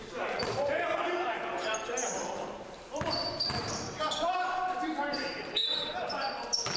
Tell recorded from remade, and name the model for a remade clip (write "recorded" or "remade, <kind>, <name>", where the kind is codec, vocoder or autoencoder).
remade, vocoder, BigVGAN v2